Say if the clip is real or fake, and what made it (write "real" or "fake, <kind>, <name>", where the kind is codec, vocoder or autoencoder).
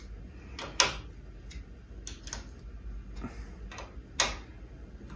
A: real